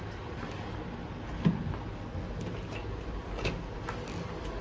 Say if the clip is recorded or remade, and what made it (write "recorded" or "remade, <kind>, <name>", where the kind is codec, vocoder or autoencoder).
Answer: recorded